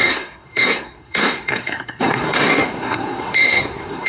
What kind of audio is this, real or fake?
fake